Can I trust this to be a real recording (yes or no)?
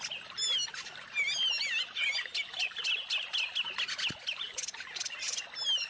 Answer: yes